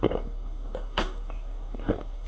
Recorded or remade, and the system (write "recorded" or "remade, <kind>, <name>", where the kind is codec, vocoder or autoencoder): remade, codec, DAC